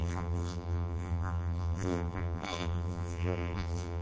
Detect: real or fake fake